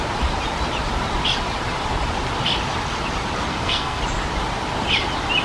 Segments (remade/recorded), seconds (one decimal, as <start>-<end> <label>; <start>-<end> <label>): 0.0-3.5 recorded; 3.5-4.0 remade; 4.0-5.4 recorded